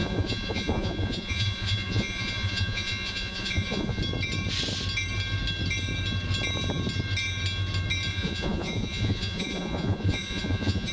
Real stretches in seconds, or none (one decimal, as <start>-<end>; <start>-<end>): 4.0-8.1